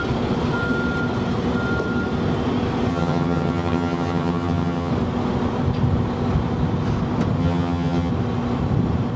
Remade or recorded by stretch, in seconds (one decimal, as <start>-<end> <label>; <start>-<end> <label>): 0.0-2.9 recorded; 2.9-4.9 remade; 4.9-7.4 recorded; 7.4-8.1 remade; 8.1-9.2 recorded